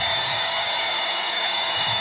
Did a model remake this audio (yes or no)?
yes